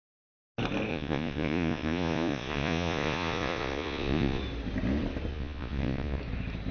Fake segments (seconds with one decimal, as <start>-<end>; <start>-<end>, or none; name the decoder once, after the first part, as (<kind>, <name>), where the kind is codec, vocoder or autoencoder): 0.9-4.4 (vocoder, Vocos); 5.3-6.2